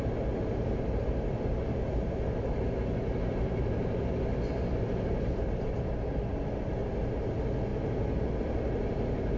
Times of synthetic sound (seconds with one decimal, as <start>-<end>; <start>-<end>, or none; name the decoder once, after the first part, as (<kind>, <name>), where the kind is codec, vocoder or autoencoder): none